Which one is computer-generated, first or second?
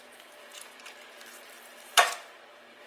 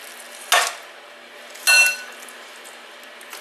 first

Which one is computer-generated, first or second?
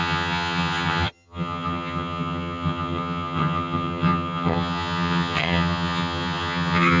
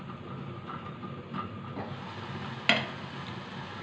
first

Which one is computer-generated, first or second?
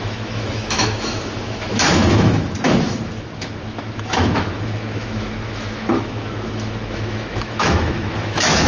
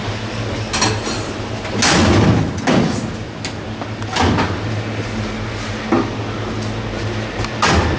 first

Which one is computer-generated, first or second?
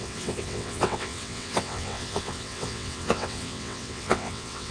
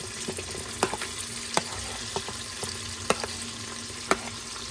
first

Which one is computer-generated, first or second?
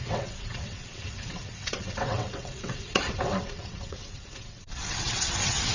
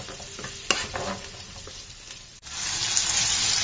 first